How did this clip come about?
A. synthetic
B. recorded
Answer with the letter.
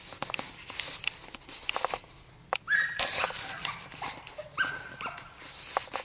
B